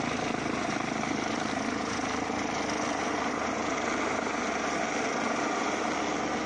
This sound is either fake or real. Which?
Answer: real